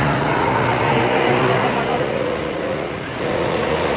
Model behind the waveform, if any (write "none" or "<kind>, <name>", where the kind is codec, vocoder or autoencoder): vocoder, Vocos